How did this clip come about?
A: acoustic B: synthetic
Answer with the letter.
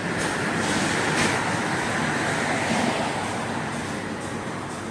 A